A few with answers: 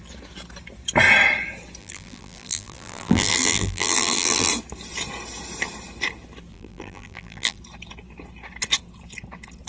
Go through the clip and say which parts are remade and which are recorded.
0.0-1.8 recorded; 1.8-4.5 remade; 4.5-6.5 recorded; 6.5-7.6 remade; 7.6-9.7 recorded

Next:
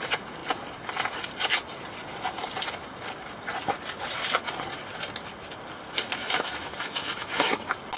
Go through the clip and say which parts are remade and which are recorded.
0.0-6.2 recorded; 6.2-7.6 remade; 7.6-8.0 recorded

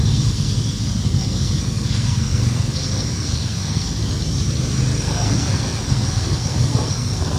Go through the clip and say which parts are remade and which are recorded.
0.0-4.0 remade; 4.0-5.0 recorded; 5.0-7.4 remade

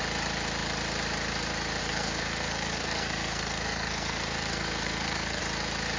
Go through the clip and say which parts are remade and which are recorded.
0.0-1.8 recorded; 1.8-5.4 remade; 5.4-6.0 recorded

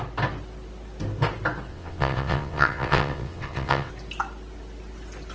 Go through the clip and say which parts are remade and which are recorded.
0.0-1.7 recorded; 1.7-3.9 remade; 3.9-5.3 recorded

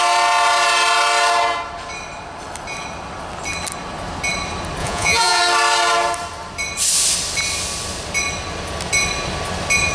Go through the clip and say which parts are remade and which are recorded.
0.0-4.8 recorded; 4.8-5.4 remade; 5.4-9.9 recorded